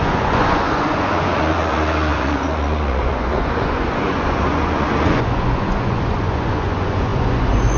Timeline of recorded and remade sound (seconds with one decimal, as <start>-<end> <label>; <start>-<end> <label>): 0.0-7.8 remade